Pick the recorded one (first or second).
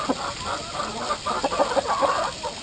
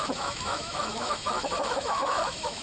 first